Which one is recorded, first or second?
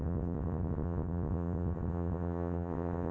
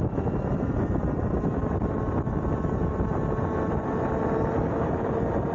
second